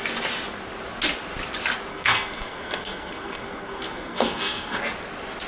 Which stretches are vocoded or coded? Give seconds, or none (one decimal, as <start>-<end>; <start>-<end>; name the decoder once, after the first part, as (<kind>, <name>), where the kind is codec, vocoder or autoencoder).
1.9-4.8 (codec, SNAC)